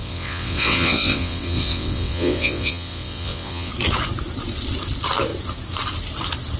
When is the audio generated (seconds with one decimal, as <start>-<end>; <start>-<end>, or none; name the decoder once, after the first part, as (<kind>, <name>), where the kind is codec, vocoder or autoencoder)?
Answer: 0.0-3.7 (vocoder, WaveNeXt)